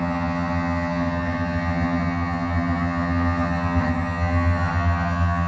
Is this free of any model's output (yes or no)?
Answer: no